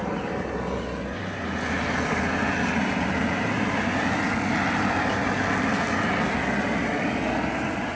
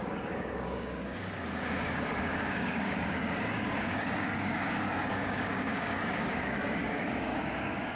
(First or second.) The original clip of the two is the first